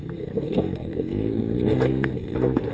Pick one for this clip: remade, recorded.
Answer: remade